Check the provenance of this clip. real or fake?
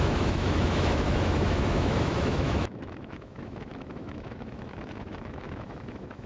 fake